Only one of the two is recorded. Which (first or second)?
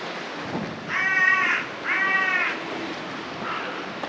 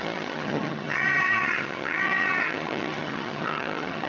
first